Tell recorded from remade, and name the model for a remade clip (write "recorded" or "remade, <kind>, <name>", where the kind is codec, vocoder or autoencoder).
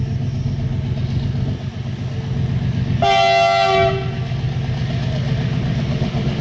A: recorded